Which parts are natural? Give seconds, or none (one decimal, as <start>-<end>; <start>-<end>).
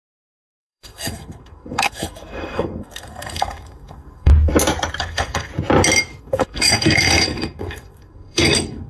4.3-5.0; 5.5-6.2